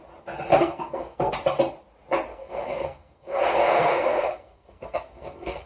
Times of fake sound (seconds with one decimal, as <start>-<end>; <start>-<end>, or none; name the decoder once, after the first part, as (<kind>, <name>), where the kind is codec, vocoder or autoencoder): 0.5-1.3 (codec, SNAC); 2.3-5.7